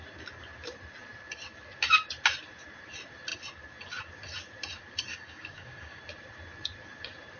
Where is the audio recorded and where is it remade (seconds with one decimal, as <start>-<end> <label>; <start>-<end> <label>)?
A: 0.0-5.1 recorded; 5.1-6.0 remade; 6.0-7.4 recorded